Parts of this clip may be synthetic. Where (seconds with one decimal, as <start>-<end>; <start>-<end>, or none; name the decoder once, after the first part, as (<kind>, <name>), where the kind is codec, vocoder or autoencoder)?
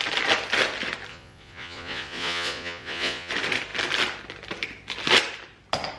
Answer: 1.1-3.3 (vocoder, Vocos)